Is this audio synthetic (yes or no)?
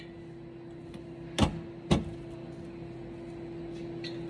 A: no